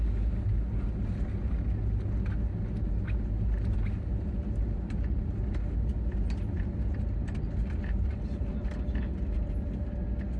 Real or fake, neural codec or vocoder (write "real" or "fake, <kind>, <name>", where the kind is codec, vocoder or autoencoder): real